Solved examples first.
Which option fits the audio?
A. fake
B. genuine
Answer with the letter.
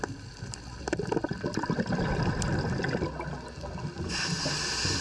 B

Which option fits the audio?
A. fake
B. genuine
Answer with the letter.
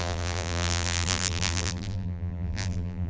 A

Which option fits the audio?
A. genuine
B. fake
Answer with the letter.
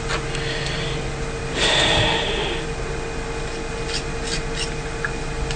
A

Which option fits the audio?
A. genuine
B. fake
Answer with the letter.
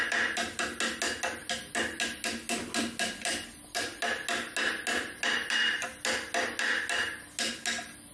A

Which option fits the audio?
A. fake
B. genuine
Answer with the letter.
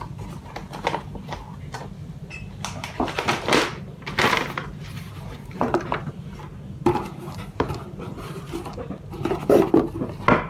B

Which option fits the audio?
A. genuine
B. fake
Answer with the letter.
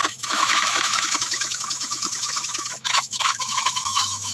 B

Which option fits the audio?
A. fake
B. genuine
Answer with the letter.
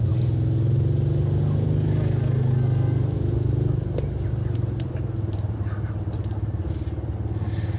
B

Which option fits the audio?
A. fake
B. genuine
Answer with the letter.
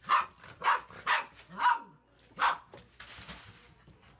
B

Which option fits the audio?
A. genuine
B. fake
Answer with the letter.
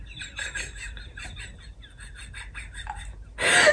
A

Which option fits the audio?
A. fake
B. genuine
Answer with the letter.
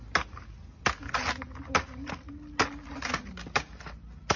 B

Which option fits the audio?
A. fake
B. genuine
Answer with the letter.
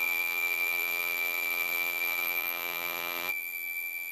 A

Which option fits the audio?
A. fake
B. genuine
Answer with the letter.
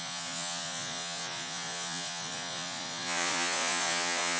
A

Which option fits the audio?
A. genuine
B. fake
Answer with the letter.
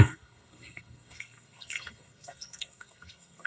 B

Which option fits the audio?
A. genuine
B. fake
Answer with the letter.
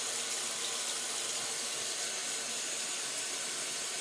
A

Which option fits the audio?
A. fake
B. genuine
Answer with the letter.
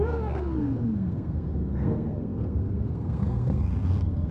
A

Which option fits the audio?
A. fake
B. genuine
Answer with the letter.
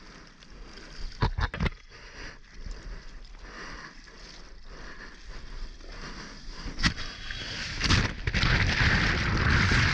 B